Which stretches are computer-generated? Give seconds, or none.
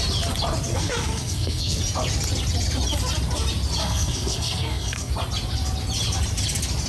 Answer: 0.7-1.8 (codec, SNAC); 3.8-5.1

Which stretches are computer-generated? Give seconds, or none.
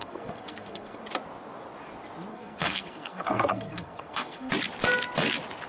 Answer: 0.0-1.0 (codec, SNAC); 2.3-4.5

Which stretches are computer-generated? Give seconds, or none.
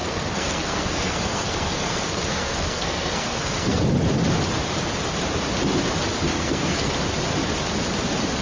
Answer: 0.0-3.8 (codec, SNAC); 6.3-6.9